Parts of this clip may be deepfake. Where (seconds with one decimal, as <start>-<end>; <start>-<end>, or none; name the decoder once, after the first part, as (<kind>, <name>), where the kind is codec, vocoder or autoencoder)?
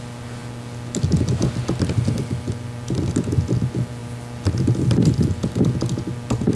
none